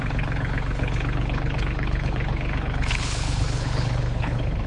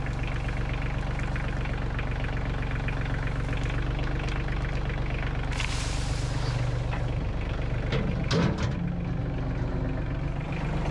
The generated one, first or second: first